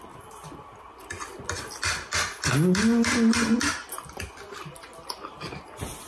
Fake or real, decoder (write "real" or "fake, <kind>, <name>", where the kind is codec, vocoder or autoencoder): real